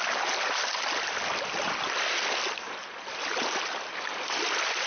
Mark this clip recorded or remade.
recorded